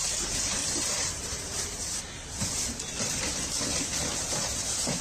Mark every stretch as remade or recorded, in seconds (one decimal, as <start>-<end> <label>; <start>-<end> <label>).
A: 0.0-0.6 recorded; 0.6-2.0 remade; 2.0-2.4 recorded; 2.4-3.1 remade; 3.1-3.7 recorded; 3.7-5.0 remade